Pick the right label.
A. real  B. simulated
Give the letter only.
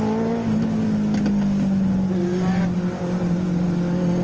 A